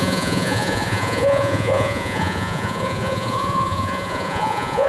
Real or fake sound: fake